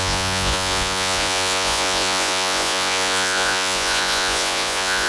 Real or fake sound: fake